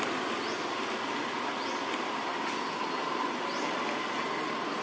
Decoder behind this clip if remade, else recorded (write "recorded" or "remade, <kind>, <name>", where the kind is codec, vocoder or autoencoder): recorded